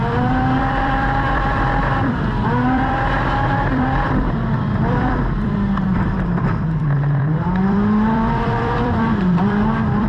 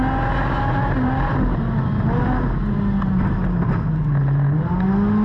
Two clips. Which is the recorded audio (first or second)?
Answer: second